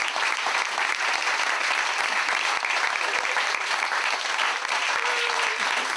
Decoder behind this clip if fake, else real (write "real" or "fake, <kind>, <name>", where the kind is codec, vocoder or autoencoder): real